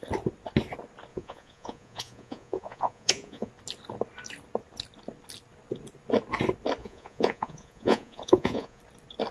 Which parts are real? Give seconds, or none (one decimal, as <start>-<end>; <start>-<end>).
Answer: 0.0-1.1; 3.5-6.8; 8.8-9.3